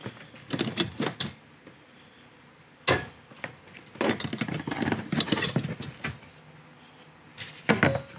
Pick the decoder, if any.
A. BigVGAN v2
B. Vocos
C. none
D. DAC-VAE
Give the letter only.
C